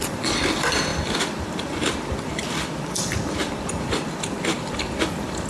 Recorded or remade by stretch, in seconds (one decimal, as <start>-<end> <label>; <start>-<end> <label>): 0.0-5.5 remade